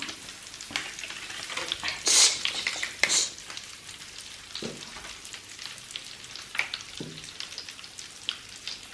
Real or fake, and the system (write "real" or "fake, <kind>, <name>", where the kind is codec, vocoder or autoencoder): real